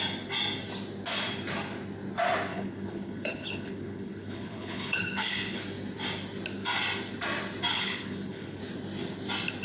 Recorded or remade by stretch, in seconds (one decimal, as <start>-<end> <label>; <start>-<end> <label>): 0.0-2.5 recorded; 2.5-5.6 remade; 5.6-7.7 recorded; 7.7-8.6 remade; 8.6-9.6 recorded